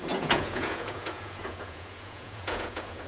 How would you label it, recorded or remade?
remade